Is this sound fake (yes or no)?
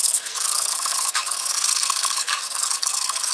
yes